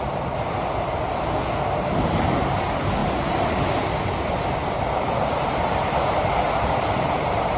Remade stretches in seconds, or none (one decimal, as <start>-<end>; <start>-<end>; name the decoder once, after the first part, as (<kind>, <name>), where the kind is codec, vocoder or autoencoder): none